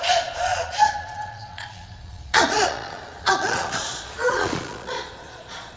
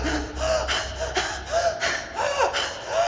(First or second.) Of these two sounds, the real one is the second